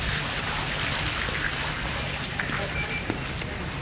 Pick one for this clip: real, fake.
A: real